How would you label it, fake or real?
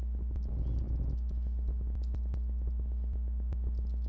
real